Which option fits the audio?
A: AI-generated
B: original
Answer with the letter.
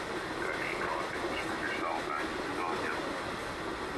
B